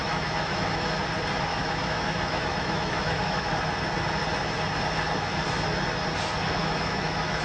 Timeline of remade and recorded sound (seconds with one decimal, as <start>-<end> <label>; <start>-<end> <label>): 0.0-1.0 remade; 1.0-1.5 recorded; 1.5-3.5 remade; 3.5-6.6 recorded; 6.6-7.4 remade

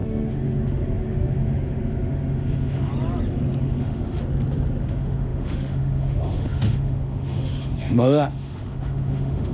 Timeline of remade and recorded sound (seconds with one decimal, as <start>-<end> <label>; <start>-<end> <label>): 0.0-2.9 remade; 2.9-3.6 recorded; 3.6-4.2 remade; 4.2-4.8 recorded; 4.8-9.5 remade

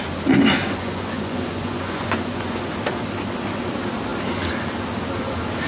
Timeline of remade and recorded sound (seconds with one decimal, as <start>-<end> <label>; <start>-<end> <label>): 0.0-0.6 recorded; 0.6-2.6 remade; 2.6-5.7 recorded

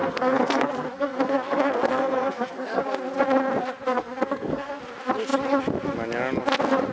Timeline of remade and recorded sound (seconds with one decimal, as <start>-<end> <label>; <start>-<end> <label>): 0.0-2.8 remade; 2.8-3.9 recorded; 3.9-4.8 remade; 4.8-6.9 recorded

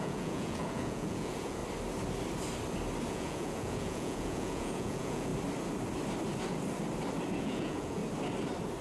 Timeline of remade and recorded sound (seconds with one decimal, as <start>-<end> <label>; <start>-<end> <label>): 0.0-1.6 remade; 1.6-3.1 recorded; 3.1-5.3 remade; 5.3-7.4 recorded; 7.4-8.0 remade; 8.0-8.8 recorded

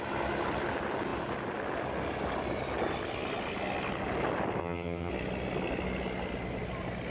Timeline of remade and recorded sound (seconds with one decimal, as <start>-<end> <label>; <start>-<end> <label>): 0.0-4.6 recorded; 4.6-5.1 remade; 5.1-7.1 recorded

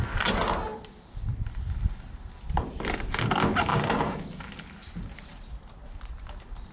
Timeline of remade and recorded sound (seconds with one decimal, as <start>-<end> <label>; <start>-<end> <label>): 0.0-6.7 recorded